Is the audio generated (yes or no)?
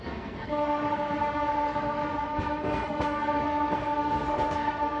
yes